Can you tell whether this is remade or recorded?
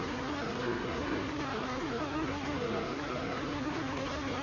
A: remade